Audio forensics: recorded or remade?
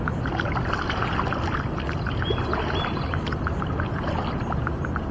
recorded